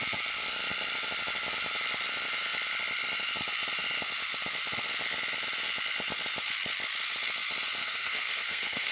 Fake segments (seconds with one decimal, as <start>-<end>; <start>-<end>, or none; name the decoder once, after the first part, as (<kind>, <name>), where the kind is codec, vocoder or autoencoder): 7.8-8.9 (codec, SNAC)